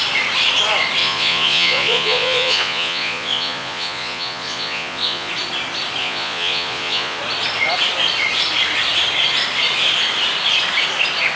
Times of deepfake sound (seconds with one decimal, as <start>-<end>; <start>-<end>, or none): 1.0-5.3; 6.0-7.2